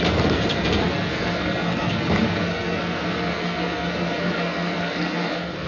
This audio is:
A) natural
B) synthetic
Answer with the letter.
B